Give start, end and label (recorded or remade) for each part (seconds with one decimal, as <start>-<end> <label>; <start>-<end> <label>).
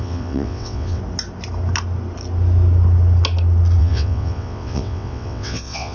0.0-1.0 remade; 1.0-3.8 recorded; 3.8-5.9 remade